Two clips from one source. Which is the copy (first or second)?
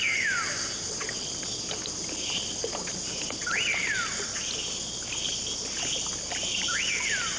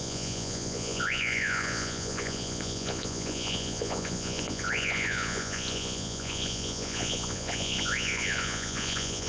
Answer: second